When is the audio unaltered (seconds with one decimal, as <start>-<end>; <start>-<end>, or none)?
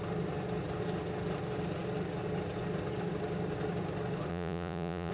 0.0-4.3